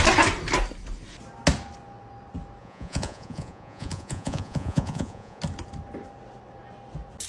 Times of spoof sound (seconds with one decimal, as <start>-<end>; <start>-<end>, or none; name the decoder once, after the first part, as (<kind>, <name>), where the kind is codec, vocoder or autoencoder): 2.6-5.4 (vocoder, Vocos)